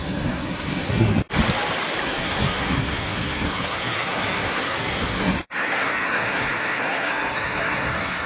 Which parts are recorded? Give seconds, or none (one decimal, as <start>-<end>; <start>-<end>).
1.2-2.0